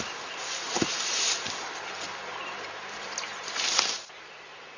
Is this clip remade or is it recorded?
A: recorded